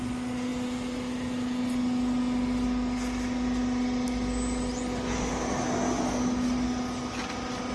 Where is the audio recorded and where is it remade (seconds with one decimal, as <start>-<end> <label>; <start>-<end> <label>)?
0.0-7.7 recorded